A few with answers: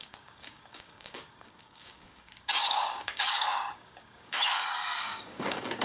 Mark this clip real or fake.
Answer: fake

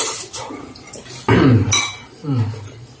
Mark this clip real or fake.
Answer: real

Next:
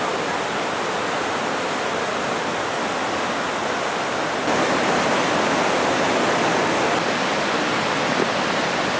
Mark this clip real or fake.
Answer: real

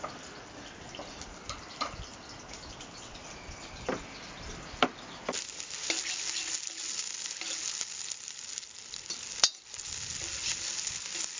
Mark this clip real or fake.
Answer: real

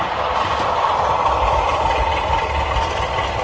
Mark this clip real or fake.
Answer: real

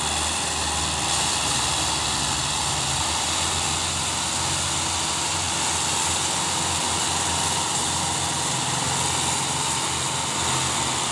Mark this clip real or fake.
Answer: real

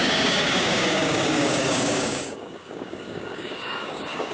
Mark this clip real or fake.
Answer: fake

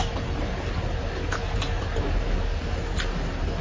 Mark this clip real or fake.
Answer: real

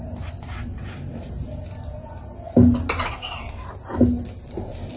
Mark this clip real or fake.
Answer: real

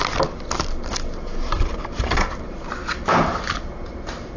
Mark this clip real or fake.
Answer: real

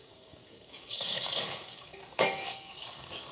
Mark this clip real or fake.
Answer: fake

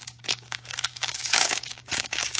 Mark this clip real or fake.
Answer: fake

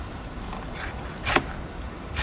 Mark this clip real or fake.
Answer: real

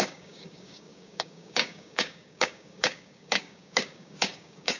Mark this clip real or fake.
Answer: fake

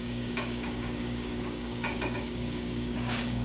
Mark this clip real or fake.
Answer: fake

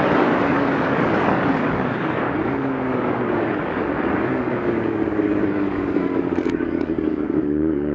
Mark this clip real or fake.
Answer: fake